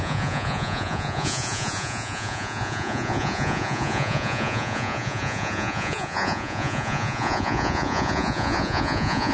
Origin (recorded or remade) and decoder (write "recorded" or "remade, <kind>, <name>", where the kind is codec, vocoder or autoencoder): remade, vocoder, Vocos